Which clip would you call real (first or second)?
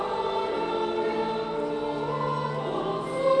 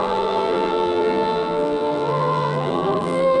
first